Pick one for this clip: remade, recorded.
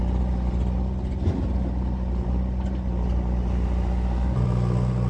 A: recorded